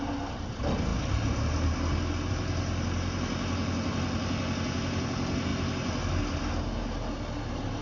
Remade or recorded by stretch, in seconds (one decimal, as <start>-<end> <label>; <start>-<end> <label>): 0.0-7.8 recorded